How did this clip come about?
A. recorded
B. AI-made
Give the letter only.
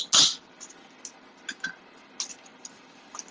A